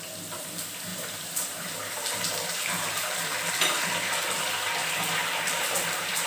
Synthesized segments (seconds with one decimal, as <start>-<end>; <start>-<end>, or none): 0.9-3.5; 4.8-6.3